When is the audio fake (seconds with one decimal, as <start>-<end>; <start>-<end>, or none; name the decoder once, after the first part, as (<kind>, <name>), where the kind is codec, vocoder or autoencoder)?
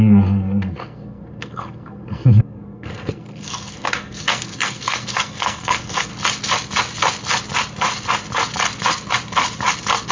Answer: 0.0-6.1 (codec, SNAC)